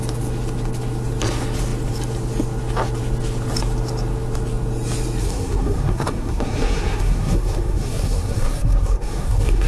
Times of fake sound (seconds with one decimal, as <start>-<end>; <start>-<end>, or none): 5.2-9.7